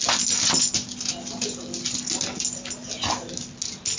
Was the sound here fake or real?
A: real